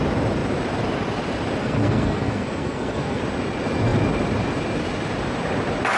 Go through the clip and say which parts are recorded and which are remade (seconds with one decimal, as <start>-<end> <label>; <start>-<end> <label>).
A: 0.0-1.6 recorded; 1.6-3.2 remade; 3.2-6.0 recorded